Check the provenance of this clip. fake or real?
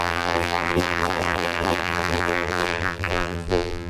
fake